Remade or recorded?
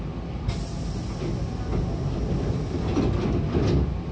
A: recorded